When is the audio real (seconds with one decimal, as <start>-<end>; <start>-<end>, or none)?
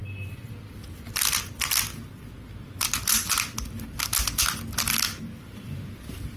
0.0-6.4